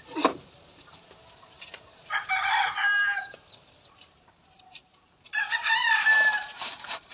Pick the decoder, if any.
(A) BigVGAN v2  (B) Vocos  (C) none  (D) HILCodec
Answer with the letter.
A